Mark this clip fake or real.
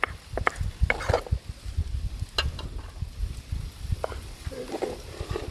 real